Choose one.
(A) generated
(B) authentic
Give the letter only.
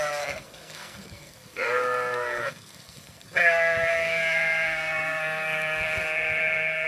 A